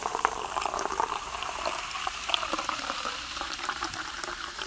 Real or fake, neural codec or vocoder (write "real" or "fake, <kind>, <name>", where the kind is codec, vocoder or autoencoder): fake, vocoder, BigVGAN v2